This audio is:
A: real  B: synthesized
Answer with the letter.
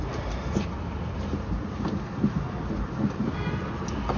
A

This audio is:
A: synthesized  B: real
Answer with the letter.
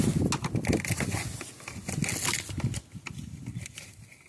B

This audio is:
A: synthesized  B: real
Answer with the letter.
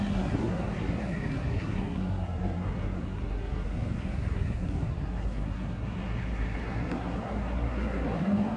A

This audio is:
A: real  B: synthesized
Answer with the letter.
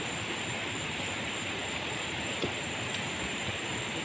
B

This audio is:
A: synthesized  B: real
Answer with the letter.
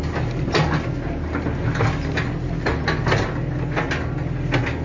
B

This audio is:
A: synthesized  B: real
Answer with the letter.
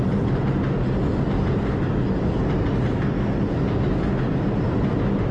B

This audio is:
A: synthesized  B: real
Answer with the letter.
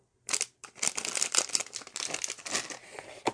B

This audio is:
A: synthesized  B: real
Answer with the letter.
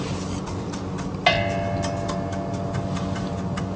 B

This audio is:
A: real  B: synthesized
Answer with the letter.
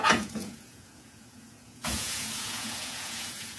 B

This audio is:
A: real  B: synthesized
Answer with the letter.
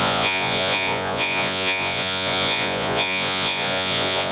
B